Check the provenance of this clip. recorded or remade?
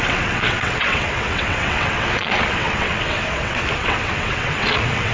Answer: remade